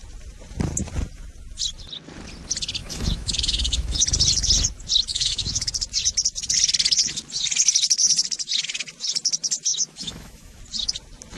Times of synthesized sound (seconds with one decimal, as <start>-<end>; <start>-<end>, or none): 2.8-4.0; 5.1-5.7; 9.7-10.6